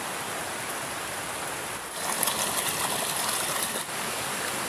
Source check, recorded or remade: recorded